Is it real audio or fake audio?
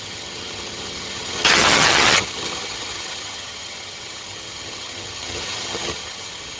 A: fake